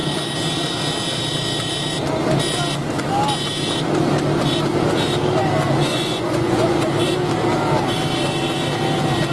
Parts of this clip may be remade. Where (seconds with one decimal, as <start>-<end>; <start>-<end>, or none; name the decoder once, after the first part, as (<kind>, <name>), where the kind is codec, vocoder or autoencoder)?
5.8-6.9 (vocoder, Vocos)